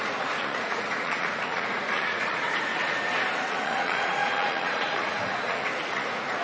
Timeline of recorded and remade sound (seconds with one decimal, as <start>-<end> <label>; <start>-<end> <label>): 0.0-2.7 remade; 2.7-3.4 recorded; 3.4-6.4 remade